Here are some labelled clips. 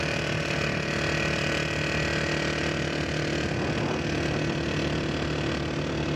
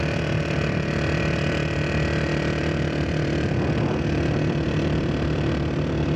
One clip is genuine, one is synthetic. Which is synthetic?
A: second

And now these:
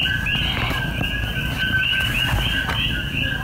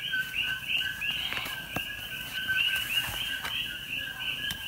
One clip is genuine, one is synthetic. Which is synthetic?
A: second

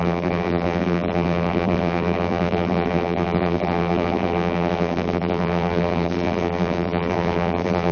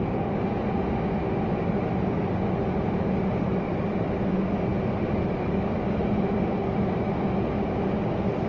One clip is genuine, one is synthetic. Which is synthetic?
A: first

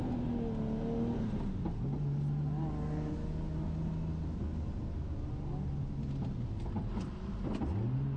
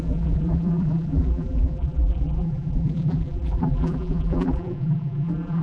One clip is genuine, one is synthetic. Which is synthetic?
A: second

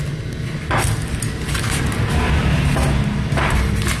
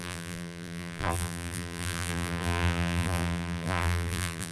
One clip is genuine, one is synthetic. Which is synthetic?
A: second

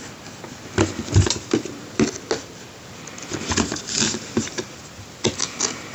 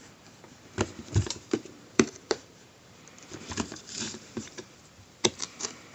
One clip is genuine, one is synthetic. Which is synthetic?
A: second